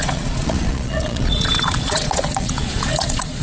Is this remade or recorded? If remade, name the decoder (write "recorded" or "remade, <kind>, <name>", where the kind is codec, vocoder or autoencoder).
remade, vocoder, Vocos